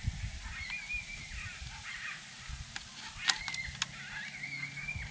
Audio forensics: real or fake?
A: real